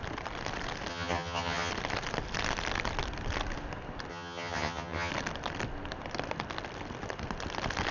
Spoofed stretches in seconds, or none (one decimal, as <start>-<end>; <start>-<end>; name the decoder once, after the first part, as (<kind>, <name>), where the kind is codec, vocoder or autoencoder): 0.9-1.7 (vocoder, HiFi-GAN); 4.1-5.1